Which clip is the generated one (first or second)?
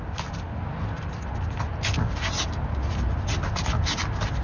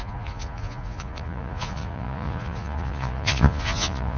second